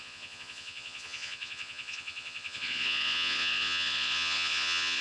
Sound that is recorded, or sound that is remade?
remade